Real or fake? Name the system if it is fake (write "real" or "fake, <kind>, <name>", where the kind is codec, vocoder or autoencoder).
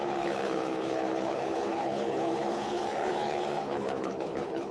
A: fake, codec, HILCodec